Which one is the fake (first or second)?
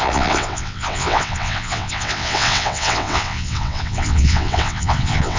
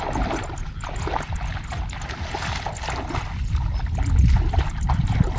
first